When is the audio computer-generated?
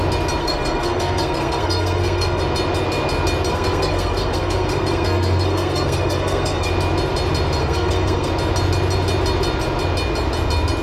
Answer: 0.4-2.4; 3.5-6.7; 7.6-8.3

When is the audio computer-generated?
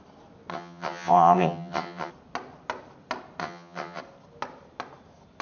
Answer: 0.5-2.1; 3.4-4.0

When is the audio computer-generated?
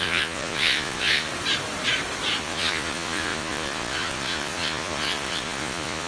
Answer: 0.0-1.3; 2.4-6.1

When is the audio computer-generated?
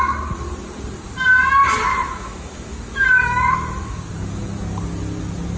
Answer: 1.9-4.0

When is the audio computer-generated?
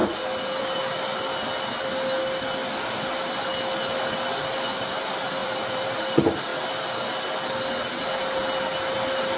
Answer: 5.4-6.0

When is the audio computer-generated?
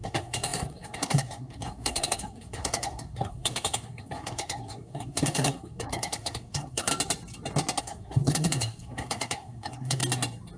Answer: 0.0-6.9; 7.8-10.0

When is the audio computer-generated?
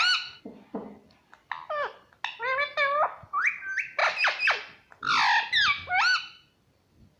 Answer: none